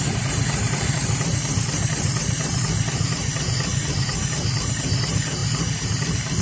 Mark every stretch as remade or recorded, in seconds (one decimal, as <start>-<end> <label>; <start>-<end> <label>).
0.0-6.4 recorded